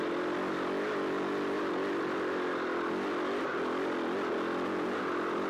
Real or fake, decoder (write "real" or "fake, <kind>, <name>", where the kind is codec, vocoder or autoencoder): real